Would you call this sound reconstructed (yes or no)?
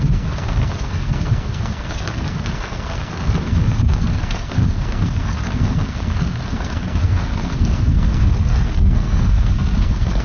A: yes